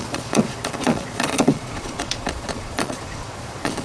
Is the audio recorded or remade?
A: remade